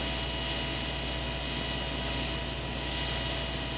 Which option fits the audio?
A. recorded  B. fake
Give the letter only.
A